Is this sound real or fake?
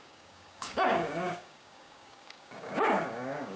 fake